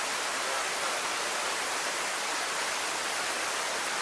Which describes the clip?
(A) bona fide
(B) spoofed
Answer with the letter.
A